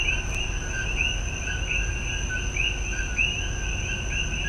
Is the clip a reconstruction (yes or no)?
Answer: no